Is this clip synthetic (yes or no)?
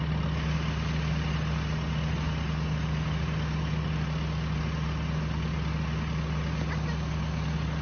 no